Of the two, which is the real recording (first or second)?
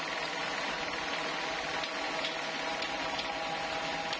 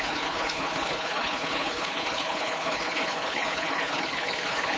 first